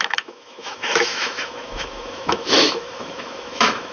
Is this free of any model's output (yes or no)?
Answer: no